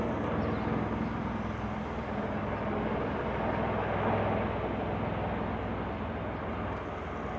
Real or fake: real